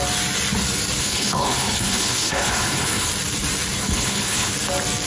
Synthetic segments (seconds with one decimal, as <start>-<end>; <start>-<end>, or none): 1.0-3.1; 3.8-4.5